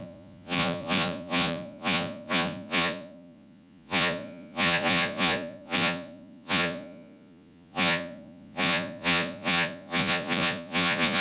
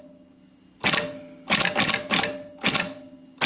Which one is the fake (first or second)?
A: first